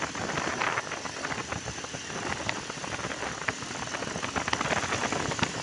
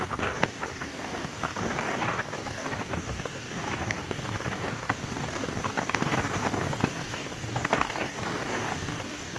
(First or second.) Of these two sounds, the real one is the first